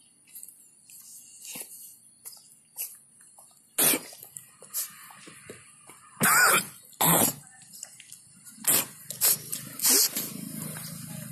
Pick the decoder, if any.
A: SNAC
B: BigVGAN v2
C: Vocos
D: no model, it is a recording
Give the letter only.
D